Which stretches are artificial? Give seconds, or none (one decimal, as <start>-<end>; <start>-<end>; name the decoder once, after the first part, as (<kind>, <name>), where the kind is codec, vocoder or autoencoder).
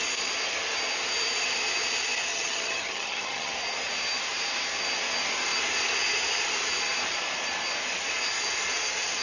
2.3-3.5 (vocoder, HiFi-GAN)